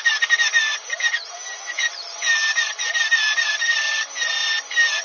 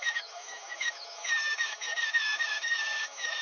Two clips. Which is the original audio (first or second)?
first